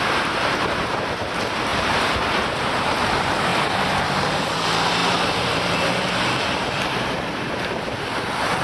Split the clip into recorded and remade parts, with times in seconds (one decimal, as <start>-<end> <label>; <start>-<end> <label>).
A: 0.0-8.6 remade